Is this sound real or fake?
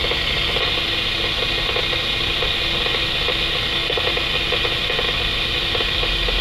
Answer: real